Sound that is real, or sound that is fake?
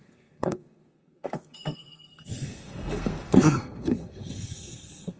fake